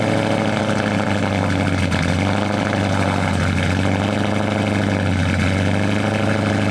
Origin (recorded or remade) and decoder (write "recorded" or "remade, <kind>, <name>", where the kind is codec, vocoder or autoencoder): recorded